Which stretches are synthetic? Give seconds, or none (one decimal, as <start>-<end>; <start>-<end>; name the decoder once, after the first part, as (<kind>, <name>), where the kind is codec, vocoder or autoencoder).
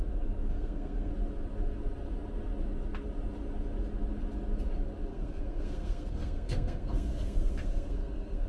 0.5-1.1 (codec, SNAC); 5.1-8.5